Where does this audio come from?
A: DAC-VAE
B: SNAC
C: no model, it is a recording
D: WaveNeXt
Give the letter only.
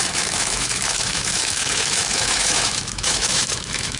A